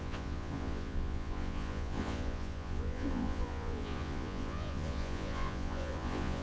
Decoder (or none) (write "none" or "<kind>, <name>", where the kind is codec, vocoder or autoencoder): vocoder, Vocos